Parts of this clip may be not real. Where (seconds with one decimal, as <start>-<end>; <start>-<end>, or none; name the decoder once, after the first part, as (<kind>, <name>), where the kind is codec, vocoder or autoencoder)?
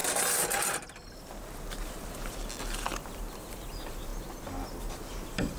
3.4-4.1 (vocoder, BigVGAN v2); 4.8-5.6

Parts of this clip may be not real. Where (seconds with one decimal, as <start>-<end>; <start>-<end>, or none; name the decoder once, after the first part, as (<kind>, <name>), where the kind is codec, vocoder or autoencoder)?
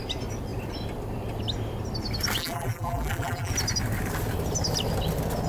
2.4-3.5 (vocoder, BigVGAN v2)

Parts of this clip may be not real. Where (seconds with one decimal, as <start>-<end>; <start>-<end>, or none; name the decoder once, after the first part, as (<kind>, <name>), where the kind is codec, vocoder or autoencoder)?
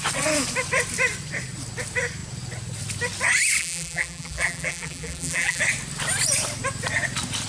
3.6-5.6 (vocoder, BigVGAN v2)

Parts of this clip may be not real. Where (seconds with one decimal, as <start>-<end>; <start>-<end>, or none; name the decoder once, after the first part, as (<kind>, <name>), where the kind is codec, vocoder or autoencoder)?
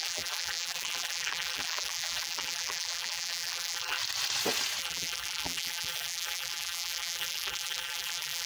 0.0-4.0 (vocoder, BigVGAN v2); 4.8-8.5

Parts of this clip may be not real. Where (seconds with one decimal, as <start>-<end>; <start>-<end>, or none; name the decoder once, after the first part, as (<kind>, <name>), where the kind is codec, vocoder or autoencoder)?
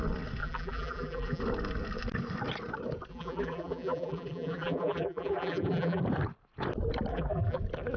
0.4-1.4 (vocoder, BigVGAN v2); 3.1-6.0; 7.1-7.6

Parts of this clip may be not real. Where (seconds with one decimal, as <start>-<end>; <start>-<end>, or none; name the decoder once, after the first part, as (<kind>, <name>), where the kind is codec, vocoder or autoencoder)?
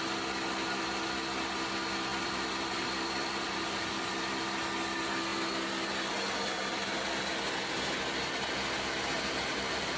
2.1-4.1 (vocoder, BigVGAN v2); 9.5-10.0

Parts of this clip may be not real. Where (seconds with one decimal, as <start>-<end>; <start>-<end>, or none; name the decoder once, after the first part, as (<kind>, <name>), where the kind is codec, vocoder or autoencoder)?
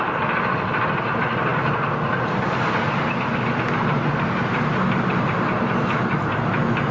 none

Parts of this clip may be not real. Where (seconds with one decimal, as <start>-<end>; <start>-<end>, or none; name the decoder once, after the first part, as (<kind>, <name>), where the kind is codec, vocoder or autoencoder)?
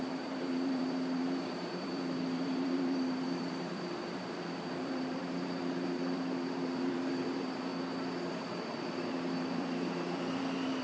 0.0-7.7 (vocoder, BigVGAN v2); 8.3-10.8